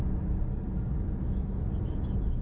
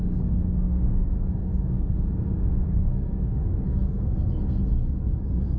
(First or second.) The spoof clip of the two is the second